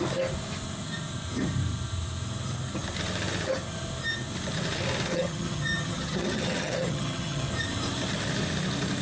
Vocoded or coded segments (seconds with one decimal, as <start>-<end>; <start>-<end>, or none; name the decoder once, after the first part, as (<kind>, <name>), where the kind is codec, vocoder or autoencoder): 5.1-7.5 (vocoder, HiFi-GAN)